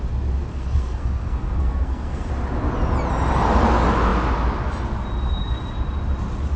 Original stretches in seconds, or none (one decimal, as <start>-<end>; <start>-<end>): 0.0-0.5; 2.3-6.6